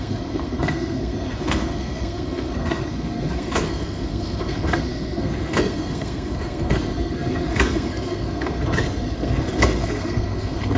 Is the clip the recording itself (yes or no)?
no